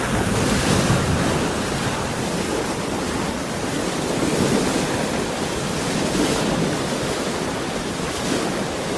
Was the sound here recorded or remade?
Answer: recorded